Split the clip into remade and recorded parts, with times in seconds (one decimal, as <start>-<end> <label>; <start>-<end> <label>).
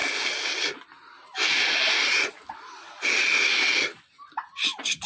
0.0-5.1 recorded